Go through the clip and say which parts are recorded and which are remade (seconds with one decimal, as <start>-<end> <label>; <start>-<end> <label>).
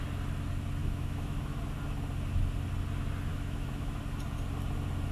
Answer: 0.0-0.8 recorded; 0.8-1.6 remade; 1.6-3.3 recorded; 3.3-4.0 remade; 4.0-5.1 recorded